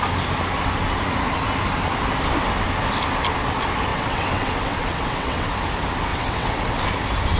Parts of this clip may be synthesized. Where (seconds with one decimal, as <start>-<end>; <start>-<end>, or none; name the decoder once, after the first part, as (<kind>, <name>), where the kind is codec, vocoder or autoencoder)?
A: 3.9-5.5 (vocoder, WaveNeXt); 6.1-6.6